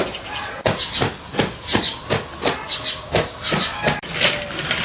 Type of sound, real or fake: real